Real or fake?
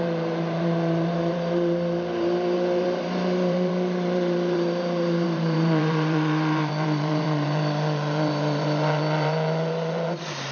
fake